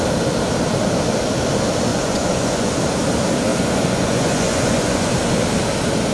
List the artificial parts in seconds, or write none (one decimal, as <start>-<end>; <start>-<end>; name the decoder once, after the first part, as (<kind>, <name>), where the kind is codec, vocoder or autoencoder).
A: 1.9-2.7 (vocoder, Vocos); 3.5-5.1